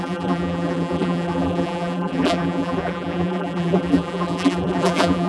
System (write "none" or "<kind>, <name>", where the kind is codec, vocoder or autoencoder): vocoder, BigVGAN v2